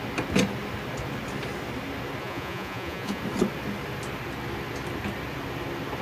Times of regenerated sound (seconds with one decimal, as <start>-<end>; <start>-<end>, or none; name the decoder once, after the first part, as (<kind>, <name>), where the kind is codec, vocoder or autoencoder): 2.2-3.2 (vocoder, Vocos)